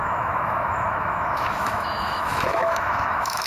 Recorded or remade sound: remade